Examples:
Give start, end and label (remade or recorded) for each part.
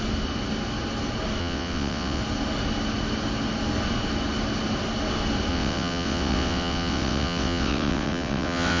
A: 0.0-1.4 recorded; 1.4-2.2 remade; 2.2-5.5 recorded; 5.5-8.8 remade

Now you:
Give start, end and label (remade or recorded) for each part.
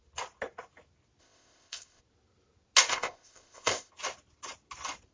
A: 0.0-1.2 recorded; 1.2-2.0 remade; 2.0-2.9 recorded; 2.9-3.9 remade; 3.9-5.1 recorded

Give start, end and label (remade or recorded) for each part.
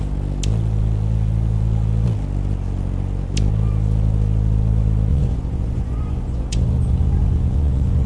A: 0.0-5.1 recorded; 5.1-8.1 remade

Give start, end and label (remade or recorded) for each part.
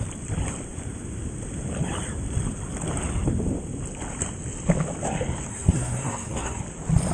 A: 0.0-5.5 recorded; 5.5-6.6 remade; 6.6-7.1 recorded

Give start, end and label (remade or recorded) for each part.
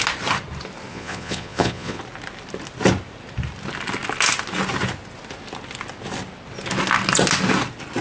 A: 0.0-0.9 recorded; 0.9-2.0 remade; 2.0-8.0 recorded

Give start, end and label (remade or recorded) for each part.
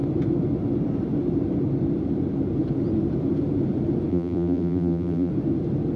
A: 0.0-4.1 recorded; 4.1-5.3 remade; 5.3-6.0 recorded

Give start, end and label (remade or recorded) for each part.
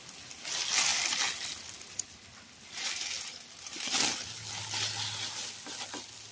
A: 0.0-6.3 recorded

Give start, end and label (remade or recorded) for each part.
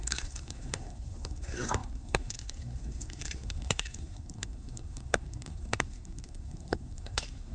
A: 0.0-7.5 remade